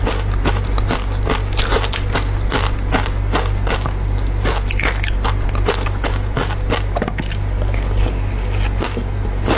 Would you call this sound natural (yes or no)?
yes